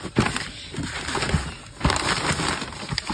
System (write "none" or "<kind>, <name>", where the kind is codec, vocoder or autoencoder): none